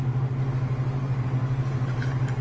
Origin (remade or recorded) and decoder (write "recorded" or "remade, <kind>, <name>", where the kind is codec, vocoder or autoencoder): recorded